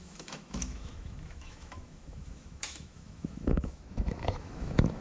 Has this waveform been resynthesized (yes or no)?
yes